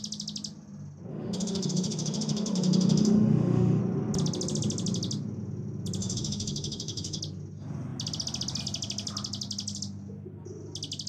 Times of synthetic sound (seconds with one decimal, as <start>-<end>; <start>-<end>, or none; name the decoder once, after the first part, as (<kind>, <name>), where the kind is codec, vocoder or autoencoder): 1.1-3.8 (autoencoder, DAC-VAE); 6.0-7.2